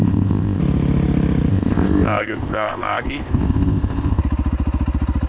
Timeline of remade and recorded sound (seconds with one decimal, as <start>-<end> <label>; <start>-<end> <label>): 0.0-0.6 remade; 0.6-1.5 recorded; 1.5-4.2 remade; 4.2-5.3 recorded